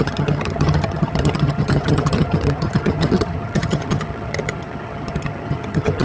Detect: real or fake fake